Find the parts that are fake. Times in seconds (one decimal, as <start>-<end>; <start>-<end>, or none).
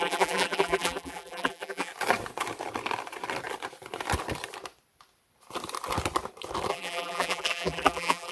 0.0-1.9; 6.7-8.3